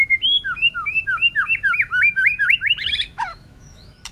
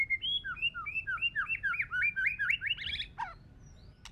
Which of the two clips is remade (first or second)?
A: first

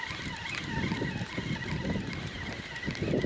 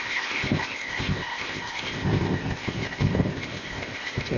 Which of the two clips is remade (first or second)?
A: second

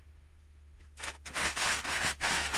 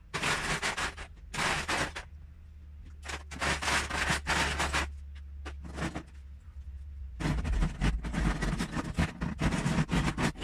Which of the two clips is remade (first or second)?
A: first